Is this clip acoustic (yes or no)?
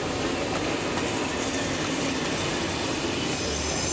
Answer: yes